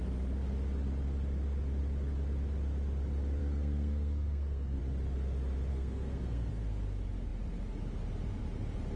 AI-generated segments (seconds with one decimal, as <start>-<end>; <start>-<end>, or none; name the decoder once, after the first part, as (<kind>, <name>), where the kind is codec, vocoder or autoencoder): 3.4-4.8 (codec, SNAC); 5.7-6.5

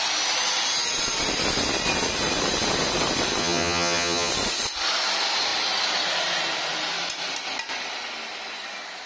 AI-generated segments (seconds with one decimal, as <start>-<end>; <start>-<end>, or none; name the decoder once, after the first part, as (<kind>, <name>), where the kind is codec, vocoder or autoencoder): 3.4-4.3 (vocoder, HiFi-GAN)

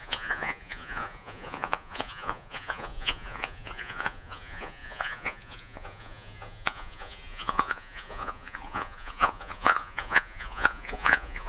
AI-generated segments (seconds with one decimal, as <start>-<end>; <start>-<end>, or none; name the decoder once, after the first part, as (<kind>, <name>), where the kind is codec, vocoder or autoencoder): 0.0-11.5 (vocoder, Vocos)

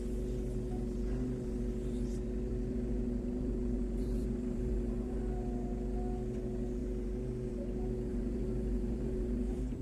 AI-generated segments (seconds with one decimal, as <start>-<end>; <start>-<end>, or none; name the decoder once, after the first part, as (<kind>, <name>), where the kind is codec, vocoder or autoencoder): 2.5-5.2 (vocoder, BigVGAN v2); 8.1-9.8

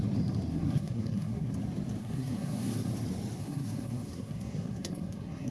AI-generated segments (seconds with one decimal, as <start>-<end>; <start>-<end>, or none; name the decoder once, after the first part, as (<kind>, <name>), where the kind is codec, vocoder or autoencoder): 0.5-1.5 (codec, SNAC); 2.0-2.9; 3.4-5.5

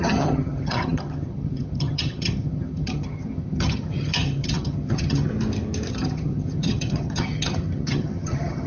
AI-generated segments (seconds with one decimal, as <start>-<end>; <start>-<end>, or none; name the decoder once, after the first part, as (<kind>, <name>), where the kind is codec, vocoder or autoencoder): 0.0-5.3 (vocoder, HiFi-GAN); 5.9-8.7

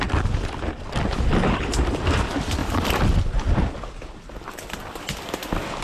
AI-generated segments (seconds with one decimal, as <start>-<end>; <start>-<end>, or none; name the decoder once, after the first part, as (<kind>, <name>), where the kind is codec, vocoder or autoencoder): none